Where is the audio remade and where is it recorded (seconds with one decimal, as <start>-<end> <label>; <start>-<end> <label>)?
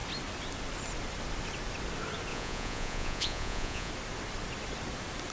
0.0-2.3 recorded; 2.3-3.9 remade; 3.9-5.3 recorded